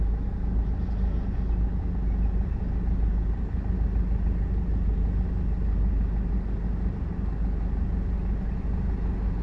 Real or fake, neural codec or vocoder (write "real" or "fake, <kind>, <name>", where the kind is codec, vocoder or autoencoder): real